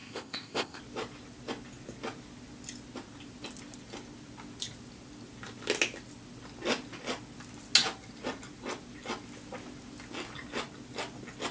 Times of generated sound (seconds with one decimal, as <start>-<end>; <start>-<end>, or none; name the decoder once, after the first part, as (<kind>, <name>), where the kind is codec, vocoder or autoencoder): 0.0-0.8 (codec, ZipCodec)

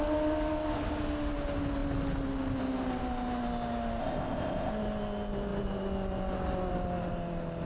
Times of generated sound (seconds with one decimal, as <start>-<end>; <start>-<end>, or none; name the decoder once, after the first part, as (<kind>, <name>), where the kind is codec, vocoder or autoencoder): 4.0-4.7 (codec, ZipCodec)

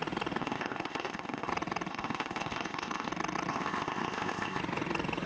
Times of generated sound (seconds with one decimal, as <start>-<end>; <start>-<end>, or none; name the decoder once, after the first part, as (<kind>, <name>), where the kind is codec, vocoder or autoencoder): 0.4-1.5 (codec, ZipCodec); 1.9-3.1; 3.5-4.6

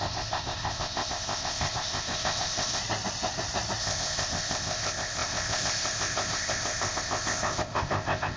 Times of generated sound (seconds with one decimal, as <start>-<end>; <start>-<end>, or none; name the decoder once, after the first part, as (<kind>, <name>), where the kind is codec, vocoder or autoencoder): 0.0-2.8 (codec, ZipCodec); 3.8-8.4

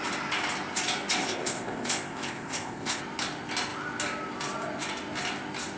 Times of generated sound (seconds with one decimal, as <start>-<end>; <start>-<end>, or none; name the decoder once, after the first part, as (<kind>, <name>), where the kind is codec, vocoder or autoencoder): 1.2-3.0 (codec, ZipCodec)

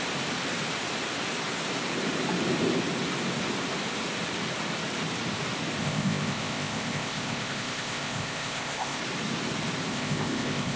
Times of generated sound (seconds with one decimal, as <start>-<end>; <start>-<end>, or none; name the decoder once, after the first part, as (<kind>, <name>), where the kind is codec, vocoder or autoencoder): 5.8-9.0 (codec, ZipCodec); 9.9-10.8

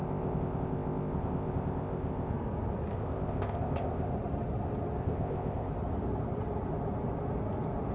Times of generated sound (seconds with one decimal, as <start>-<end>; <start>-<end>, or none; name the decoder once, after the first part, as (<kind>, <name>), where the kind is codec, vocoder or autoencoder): 0.0-2.3 (codec, ZipCodec); 2.9-4.1; 5.0-5.7

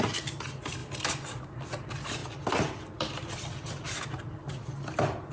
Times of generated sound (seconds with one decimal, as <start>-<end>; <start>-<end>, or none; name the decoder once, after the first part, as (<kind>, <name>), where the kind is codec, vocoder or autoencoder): none